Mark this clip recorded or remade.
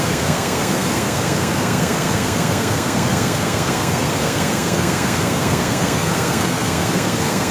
remade